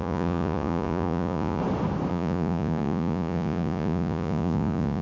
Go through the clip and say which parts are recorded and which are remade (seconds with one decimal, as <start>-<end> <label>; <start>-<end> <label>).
0.0-1.6 remade; 1.6-2.1 recorded; 2.1-5.0 remade